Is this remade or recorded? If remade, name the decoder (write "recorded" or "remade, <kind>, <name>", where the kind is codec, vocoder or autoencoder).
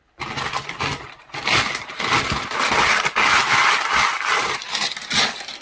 recorded